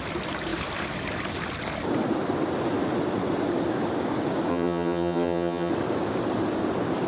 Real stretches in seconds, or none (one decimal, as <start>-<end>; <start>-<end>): 0.0-4.5; 5.7-7.1